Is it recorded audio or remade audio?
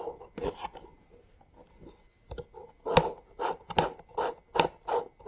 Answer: recorded